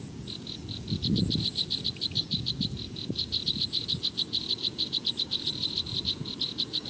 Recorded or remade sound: remade